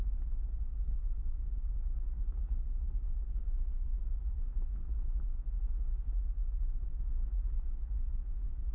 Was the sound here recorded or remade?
recorded